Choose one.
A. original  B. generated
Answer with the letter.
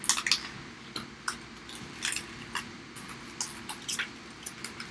A